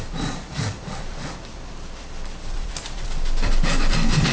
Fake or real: fake